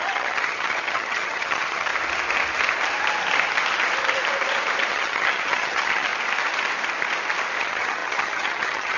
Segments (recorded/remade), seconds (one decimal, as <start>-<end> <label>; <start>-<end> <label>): 0.0-1.9 remade; 1.9-4.9 recorded; 4.9-6.1 remade; 6.1-7.6 recorded; 7.6-9.0 remade